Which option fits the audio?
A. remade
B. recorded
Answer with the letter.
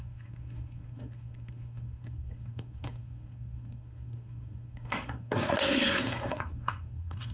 A